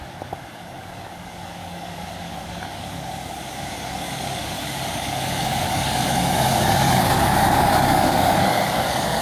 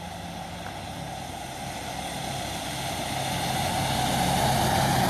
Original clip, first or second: second